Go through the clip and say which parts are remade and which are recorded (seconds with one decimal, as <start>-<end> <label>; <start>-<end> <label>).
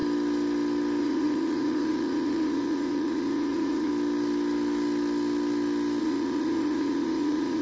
0.0-1.0 recorded; 1.0-3.9 remade; 3.9-6.0 recorded; 6.0-7.6 remade